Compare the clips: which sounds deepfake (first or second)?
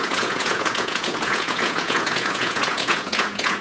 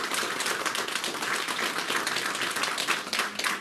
first